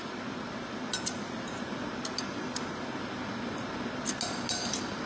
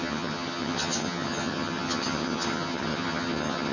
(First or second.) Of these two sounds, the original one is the first